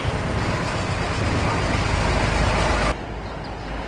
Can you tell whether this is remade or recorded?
recorded